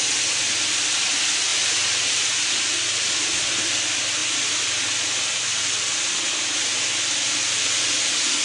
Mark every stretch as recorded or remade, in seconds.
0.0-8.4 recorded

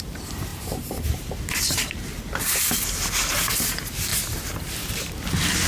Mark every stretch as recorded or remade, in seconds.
0.0-0.5 recorded; 0.5-2.1 remade; 2.1-4.1 recorded; 4.1-5.1 remade; 5.1-5.7 recorded

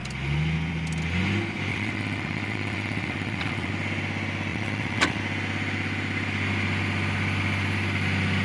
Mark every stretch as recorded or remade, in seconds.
0.0-1.7 recorded; 1.7-3.7 remade; 3.7-4.5 recorded; 4.5-5.2 remade; 5.2-8.4 recorded

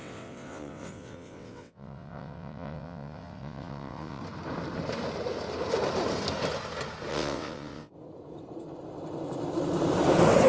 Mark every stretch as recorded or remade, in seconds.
0.0-4.2 remade; 4.2-7.1 recorded; 7.1-7.9 remade; 7.9-10.5 recorded